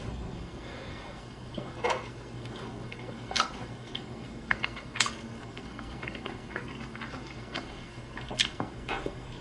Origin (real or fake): fake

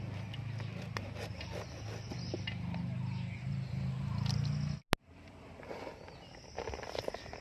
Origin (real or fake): real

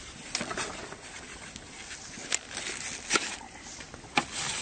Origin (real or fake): real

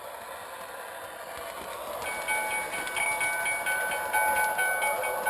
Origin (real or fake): real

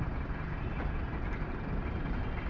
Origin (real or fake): real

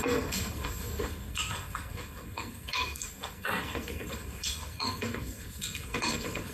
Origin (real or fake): fake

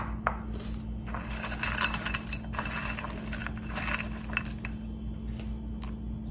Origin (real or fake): real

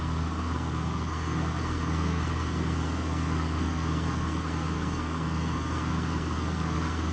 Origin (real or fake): fake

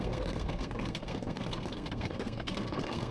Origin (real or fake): fake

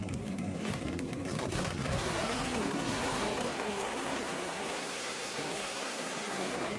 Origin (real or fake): fake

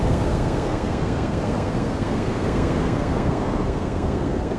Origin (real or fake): fake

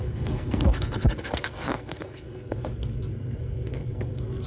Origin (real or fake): fake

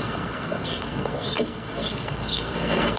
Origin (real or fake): fake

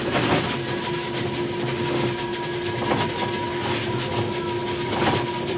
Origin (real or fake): real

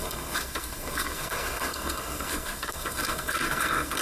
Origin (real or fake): fake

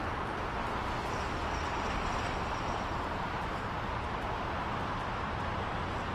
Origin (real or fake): real